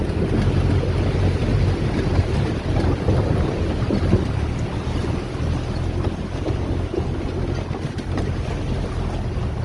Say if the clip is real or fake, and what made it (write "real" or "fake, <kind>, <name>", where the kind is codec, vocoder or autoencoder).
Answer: real